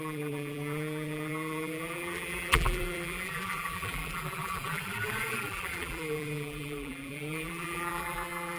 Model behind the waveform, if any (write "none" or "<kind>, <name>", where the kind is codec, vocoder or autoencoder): vocoder, BigVGAN v2